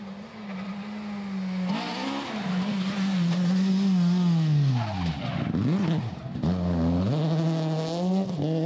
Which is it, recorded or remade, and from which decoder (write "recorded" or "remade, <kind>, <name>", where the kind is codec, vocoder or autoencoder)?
recorded